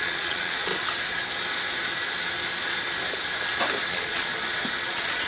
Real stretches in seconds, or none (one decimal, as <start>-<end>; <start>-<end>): 0.7-3.9; 4.3-4.8